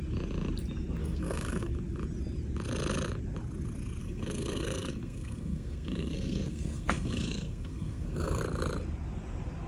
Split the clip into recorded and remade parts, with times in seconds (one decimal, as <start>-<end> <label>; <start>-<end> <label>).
0.0-1.0 recorded; 1.0-1.7 remade; 1.7-4.0 recorded; 4.0-8.4 remade; 8.4-9.7 recorded